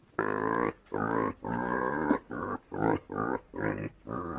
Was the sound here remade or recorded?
recorded